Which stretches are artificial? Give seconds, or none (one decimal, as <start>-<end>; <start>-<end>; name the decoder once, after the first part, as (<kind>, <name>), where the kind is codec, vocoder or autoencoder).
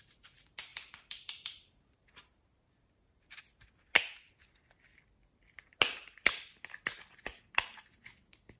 0.7-3.4 (vocoder, BigVGAN v2)